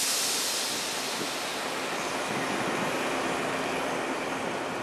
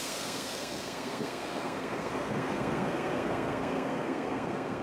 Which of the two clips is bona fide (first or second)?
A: first